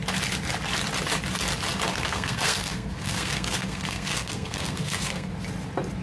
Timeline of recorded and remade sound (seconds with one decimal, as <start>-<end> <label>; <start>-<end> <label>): 0.0-1.9 recorded; 1.9-5.3 remade; 5.3-6.0 recorded